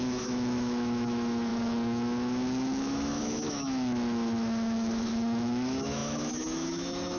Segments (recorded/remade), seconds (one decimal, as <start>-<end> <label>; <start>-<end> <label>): 0.0-7.2 remade